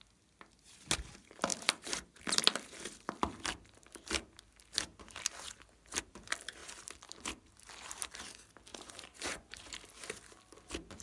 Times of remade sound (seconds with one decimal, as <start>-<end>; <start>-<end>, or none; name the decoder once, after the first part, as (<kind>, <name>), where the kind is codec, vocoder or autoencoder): 8.7-9.5 (vocoder, Vocos)